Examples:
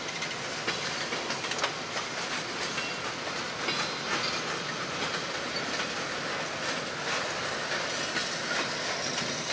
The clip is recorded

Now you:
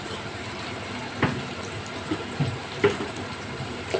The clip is remade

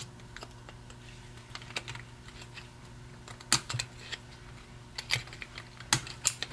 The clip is recorded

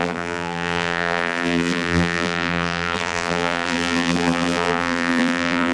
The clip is remade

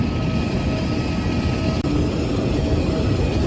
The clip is recorded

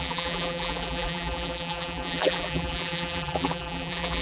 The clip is remade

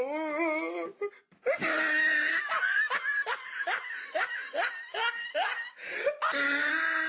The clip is recorded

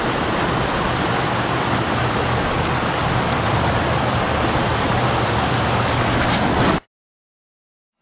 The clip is recorded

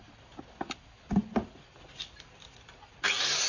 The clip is recorded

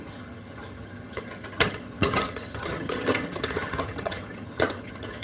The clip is remade